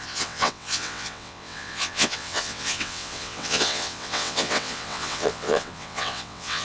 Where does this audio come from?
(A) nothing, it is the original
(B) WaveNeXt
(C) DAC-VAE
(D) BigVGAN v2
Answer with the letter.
B